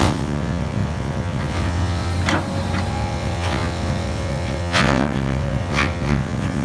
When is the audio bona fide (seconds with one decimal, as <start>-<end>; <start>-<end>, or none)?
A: 2.1-2.9